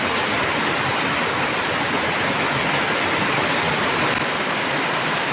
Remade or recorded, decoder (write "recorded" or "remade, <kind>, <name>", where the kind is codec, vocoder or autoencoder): recorded